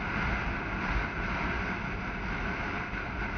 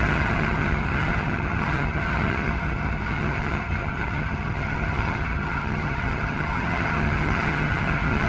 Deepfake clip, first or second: second